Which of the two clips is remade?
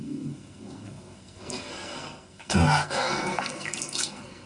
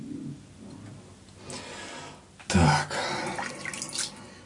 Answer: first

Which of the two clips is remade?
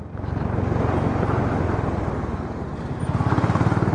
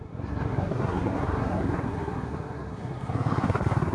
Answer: second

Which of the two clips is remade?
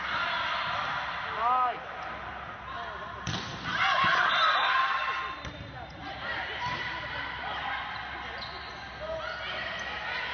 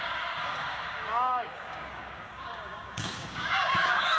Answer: second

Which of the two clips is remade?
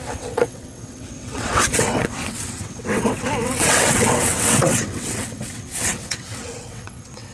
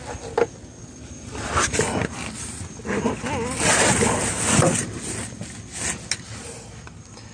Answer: first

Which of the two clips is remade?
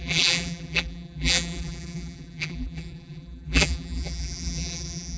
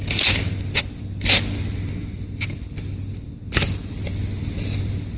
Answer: first